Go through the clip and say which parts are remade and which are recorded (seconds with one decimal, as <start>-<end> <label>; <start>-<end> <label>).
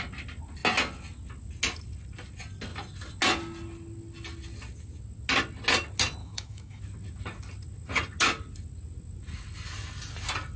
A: 0.0-6.2 recorded; 6.2-6.8 remade; 6.8-10.6 recorded